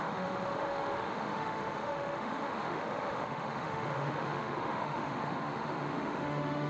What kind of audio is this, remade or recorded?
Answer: remade